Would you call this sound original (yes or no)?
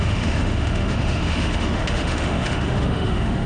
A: no